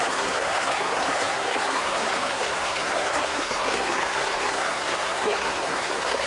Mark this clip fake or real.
fake